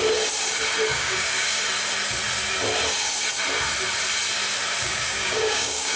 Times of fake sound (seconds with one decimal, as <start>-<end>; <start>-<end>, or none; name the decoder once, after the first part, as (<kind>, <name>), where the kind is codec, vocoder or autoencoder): 0.9-1.6 (codec, DAC); 4.8-6.0